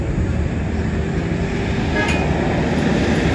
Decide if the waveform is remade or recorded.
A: recorded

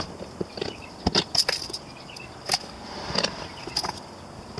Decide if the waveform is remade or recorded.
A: recorded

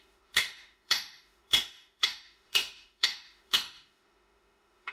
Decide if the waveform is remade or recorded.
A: remade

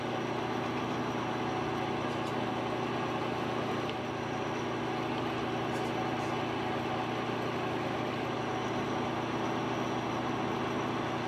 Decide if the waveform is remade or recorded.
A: recorded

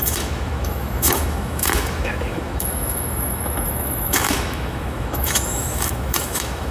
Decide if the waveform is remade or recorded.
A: remade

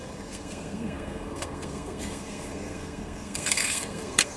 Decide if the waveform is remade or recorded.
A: remade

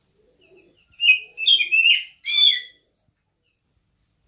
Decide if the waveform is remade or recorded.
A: recorded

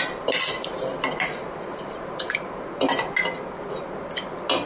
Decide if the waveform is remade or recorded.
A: recorded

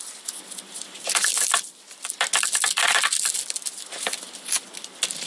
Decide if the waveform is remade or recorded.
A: recorded